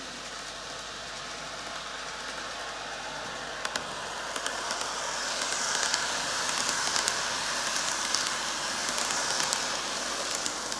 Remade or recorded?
recorded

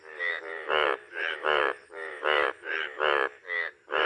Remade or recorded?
remade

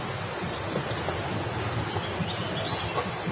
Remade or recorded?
recorded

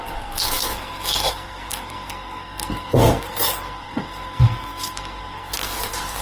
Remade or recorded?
remade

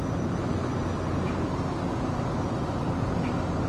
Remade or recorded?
recorded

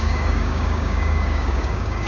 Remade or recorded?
remade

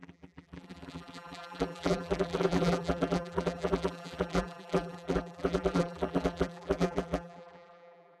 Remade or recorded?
remade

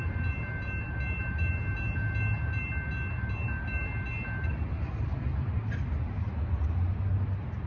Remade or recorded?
recorded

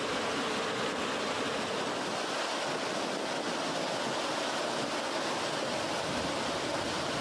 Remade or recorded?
recorded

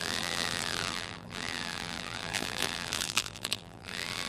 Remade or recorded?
remade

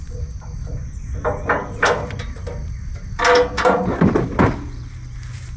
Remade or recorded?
recorded